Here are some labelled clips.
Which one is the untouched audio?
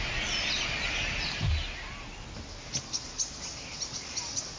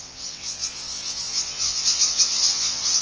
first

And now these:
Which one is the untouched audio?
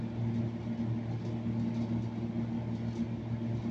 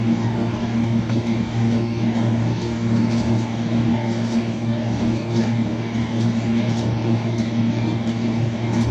first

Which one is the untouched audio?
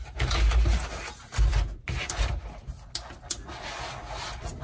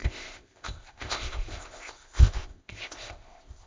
first